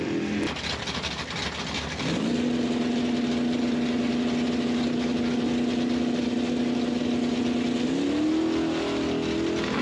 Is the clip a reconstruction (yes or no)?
no